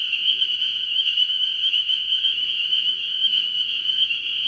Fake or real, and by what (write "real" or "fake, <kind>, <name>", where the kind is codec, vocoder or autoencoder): fake, autoencoder, DAC-VAE